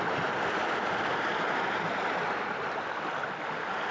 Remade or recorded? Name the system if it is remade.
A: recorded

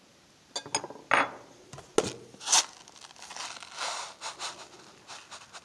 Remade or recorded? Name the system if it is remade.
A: recorded